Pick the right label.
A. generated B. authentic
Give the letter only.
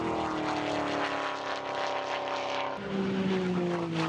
B